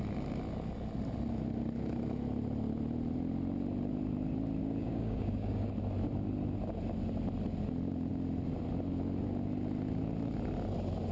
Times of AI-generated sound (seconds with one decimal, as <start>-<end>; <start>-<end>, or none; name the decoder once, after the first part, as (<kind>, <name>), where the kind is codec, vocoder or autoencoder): 4.6-5.7 (codec, DAC)